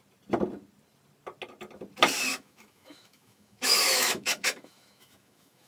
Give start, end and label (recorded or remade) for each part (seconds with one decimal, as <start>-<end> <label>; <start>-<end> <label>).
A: 0.0-2.3 recorded; 2.3-5.7 remade